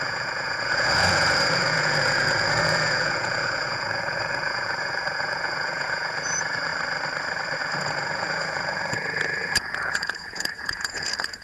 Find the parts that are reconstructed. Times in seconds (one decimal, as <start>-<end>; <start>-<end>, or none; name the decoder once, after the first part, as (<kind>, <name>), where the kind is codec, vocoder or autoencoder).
0.0-6.7 (vocoder, Vocos); 7.6-11.4